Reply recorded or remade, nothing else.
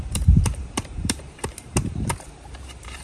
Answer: remade